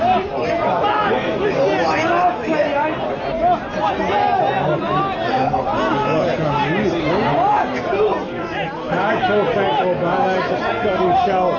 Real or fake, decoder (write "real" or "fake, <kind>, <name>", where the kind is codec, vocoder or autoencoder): real